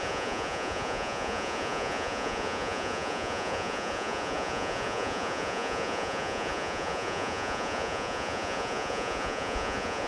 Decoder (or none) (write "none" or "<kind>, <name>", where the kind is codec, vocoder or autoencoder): vocoder, Vocos